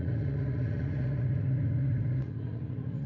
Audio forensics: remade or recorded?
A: remade